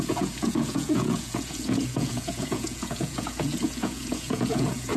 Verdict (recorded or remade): remade